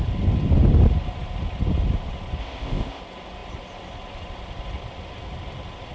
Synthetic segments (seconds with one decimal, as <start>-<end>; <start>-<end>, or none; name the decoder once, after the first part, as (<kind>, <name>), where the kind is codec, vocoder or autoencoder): 2.4-3.0 (codec, ZipCodec)